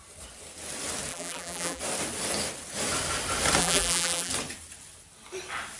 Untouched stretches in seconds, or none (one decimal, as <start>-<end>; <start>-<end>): 0.0-1.1; 1.8-3.6; 4.3-5.8